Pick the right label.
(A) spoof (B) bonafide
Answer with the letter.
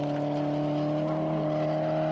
B